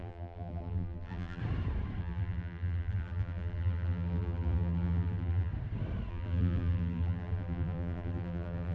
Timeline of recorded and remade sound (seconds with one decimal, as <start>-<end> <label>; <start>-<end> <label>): 0.0-1.4 remade; 1.4-2.0 recorded; 2.0-5.5 remade; 5.5-6.1 recorded; 6.1-8.7 remade

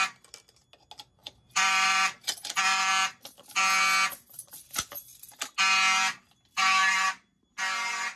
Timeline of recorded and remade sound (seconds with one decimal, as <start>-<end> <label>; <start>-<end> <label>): 0.0-1.2 recorded; 1.2-2.9 remade; 2.9-8.2 recorded

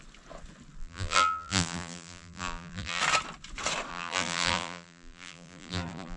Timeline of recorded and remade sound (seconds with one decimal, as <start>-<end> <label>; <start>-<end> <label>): 0.0-0.8 recorded; 0.8-3.0 remade; 3.0-3.9 recorded; 3.9-6.2 remade

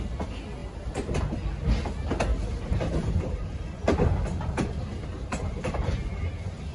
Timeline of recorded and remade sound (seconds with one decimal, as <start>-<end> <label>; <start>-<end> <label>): 0.0-2.3 recorded; 2.3-6.3 remade; 6.3-6.7 recorded

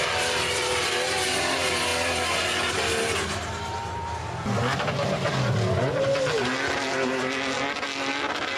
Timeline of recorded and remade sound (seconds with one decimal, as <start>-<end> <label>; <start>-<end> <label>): 0.0-8.6 recorded

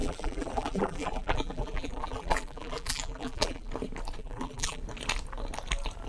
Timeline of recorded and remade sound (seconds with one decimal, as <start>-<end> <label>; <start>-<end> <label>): 0.0-3.7 remade; 3.7-4.2 recorded; 4.2-4.8 remade; 4.8-6.1 recorded